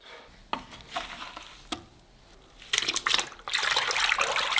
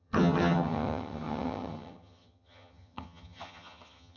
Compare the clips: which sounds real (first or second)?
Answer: first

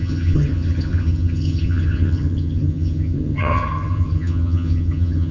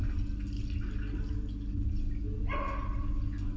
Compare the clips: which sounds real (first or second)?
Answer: second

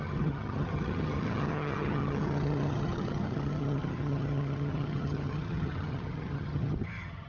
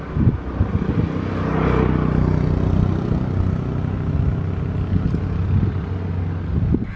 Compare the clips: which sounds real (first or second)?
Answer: second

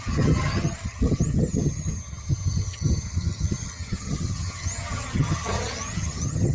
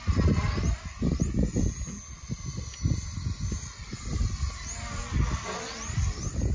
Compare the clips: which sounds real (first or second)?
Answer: second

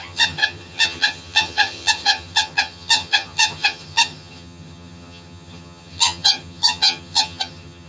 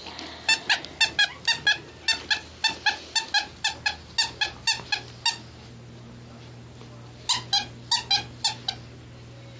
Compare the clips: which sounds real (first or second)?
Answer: second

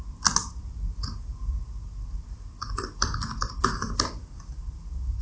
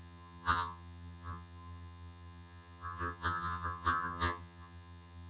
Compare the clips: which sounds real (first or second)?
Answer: first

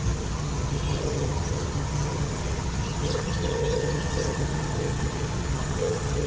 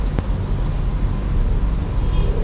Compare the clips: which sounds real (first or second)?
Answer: second